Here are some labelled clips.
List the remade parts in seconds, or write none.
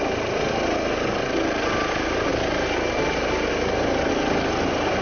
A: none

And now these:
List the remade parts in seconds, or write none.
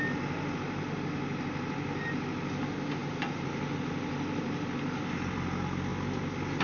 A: none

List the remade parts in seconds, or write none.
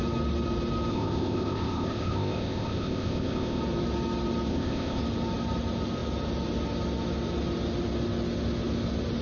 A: 0.9-3.6 (codec, ZipCodec); 4.5-5.0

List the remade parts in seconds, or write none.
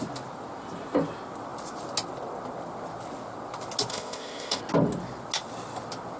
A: 3.9-4.6 (codec, ZipCodec)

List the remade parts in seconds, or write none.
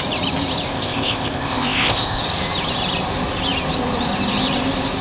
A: 0.7-2.2 (codec, ZipCodec)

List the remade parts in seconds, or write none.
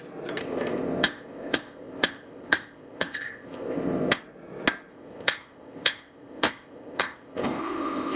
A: 0.4-4.2 (codec, ZipCodec); 4.9-8.2